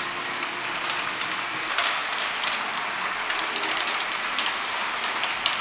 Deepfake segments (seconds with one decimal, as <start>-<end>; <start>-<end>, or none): none